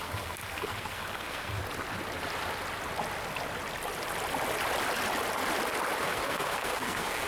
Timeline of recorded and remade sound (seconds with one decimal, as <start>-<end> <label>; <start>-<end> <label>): 0.0-1.6 remade; 1.6-6.0 recorded; 6.0-7.3 remade

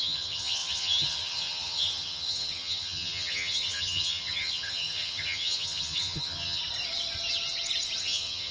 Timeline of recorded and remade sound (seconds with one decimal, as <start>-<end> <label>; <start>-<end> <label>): 0.0-6.6 remade; 6.6-8.0 recorded; 8.0-8.5 remade